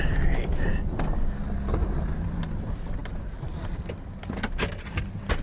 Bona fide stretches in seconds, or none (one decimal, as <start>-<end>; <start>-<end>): 0.0-5.4